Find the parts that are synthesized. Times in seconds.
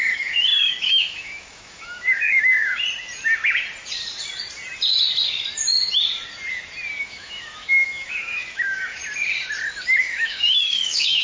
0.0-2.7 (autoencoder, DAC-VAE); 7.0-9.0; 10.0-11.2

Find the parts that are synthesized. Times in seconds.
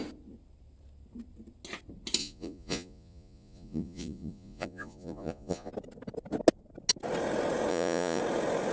2.2-5.7 (vocoder, Vocos); 7.7-8.2